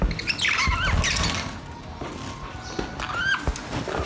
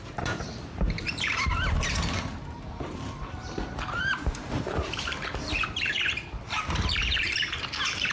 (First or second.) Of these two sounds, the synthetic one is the second